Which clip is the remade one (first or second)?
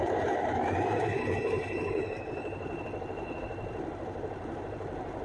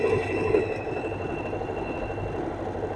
first